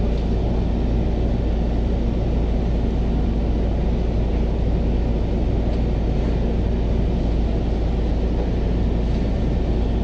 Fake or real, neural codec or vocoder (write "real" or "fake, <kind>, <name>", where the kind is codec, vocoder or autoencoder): real